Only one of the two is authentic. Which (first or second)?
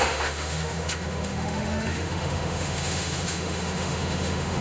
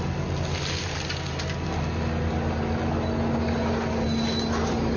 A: second